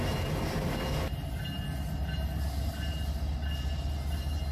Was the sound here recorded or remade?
recorded